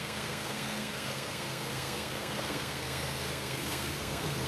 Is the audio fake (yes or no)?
yes